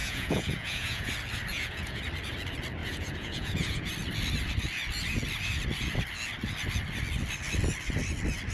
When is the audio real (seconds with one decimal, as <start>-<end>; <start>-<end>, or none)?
1.1-1.5; 2.0-2.8; 3.9-8.5

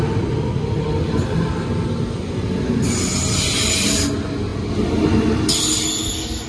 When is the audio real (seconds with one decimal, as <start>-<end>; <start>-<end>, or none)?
0.0-6.5